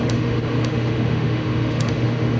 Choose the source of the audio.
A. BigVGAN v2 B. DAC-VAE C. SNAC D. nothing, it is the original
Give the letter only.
B